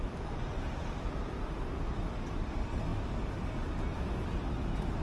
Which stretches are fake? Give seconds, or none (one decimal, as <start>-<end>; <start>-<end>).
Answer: 0.0-2.9; 3.9-5.0